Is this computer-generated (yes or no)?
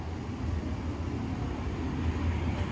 no